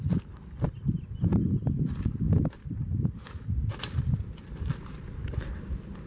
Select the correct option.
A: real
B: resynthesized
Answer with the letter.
A